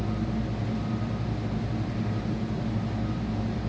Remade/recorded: recorded